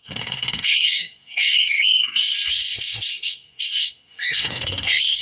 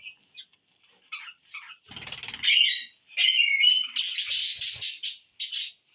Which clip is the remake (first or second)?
first